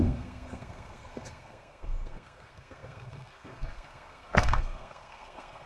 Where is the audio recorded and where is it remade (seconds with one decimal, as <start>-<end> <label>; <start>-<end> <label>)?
0.0-5.7 remade